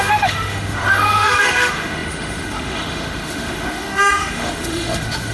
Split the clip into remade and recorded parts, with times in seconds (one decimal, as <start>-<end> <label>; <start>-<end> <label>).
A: 0.0-5.3 remade

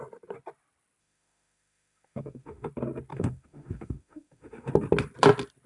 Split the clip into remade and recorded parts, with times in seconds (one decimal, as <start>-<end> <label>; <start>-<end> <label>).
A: 0.0-1.0 recorded; 1.0-2.7 remade; 2.7-3.1 recorded; 3.1-4.7 remade; 4.7-5.7 recorded

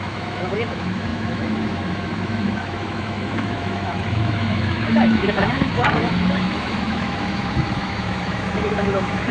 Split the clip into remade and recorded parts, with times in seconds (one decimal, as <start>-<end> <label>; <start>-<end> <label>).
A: 0.0-9.3 remade

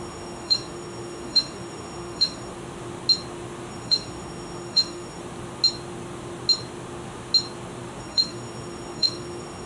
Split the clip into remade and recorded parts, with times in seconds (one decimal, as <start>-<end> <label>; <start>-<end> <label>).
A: 0.0-2.5 remade; 2.5-3.7 recorded; 3.7-5.2 remade; 5.2-8.0 recorded; 8.0-9.7 remade

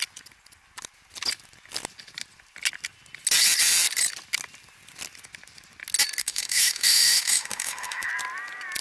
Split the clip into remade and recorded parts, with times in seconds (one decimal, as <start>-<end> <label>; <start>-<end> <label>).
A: 0.0-6.2 recorded; 6.2-8.1 remade; 8.1-8.8 recorded

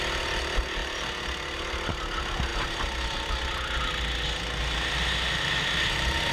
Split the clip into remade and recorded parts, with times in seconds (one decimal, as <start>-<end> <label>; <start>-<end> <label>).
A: 0.0-6.3 recorded